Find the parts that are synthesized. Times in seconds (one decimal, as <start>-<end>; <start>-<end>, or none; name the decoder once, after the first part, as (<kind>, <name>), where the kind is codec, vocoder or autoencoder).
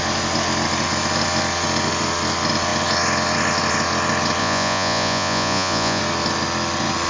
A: 4.4-6.0 (vocoder, Vocos)